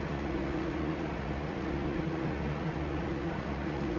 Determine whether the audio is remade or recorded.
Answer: remade